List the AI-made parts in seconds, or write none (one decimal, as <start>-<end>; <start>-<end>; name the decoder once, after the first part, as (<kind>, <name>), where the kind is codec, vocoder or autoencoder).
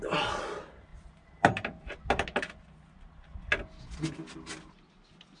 none